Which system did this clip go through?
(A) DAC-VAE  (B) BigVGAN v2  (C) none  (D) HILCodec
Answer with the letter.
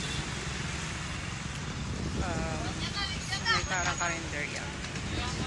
C